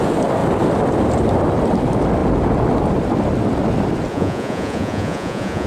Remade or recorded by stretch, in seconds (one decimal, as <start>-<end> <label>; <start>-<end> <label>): 0.0-4.1 recorded; 4.1-5.7 remade